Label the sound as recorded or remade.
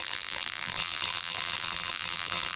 remade